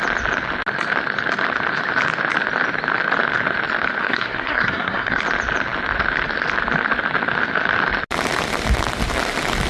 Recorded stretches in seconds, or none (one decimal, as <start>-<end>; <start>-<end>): 0.0-4.0; 5.2-9.7